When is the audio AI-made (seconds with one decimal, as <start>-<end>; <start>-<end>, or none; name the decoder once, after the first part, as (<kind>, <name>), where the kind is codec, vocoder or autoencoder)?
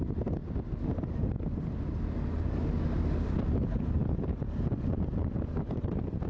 0.8-1.3 (autoencoder, DAC-VAE)